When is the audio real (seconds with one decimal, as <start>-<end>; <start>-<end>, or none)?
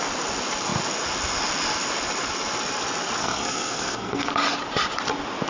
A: 0.0-3.2; 4.3-5.5